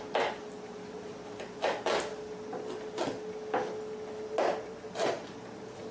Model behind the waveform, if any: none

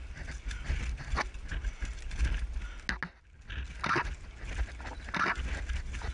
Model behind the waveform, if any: none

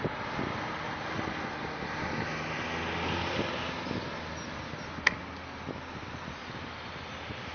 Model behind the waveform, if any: none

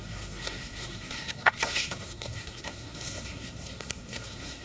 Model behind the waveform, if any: codec, SNAC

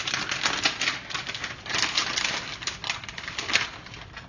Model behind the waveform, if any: none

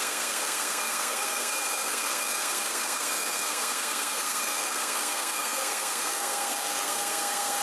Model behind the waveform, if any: codec, SNAC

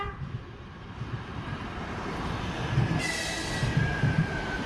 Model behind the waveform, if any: none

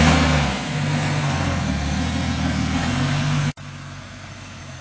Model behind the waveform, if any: codec, SNAC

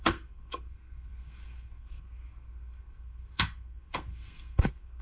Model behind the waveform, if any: codec, SNAC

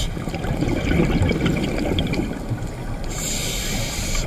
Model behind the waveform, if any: none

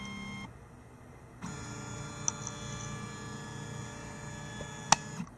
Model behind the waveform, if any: none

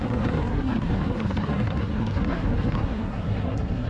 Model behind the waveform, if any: codec, SNAC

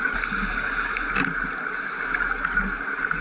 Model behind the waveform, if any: none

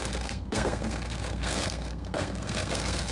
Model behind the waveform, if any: codec, SNAC